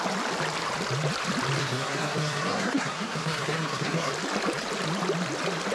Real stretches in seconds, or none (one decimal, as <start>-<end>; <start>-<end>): 0.0-1.6; 4.1-5.7